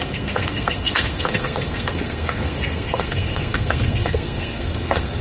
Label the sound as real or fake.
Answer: fake